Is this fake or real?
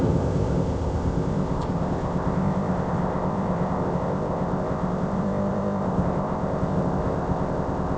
fake